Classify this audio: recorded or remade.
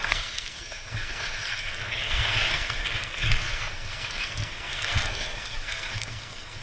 remade